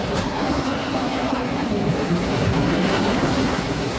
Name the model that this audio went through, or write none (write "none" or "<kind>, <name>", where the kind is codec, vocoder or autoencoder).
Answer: codec, SNAC